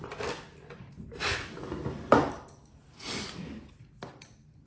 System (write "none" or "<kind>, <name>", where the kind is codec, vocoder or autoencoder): none